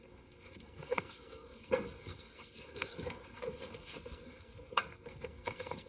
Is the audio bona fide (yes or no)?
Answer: no